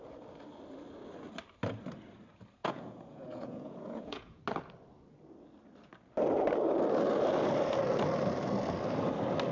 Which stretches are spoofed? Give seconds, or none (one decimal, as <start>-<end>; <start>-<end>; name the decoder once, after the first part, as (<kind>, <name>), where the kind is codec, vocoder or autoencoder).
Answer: 2.6-4.4 (vocoder, Vocos)